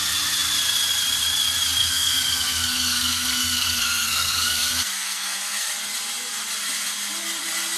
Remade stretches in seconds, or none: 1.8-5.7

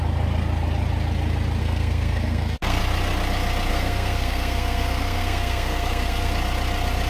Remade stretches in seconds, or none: 1.6-2.8; 3.7-6.3